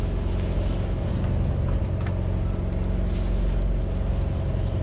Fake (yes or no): no